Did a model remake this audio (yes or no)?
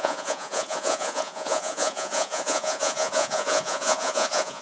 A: yes